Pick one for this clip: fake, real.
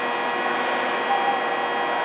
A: real